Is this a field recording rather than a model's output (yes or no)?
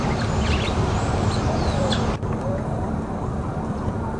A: no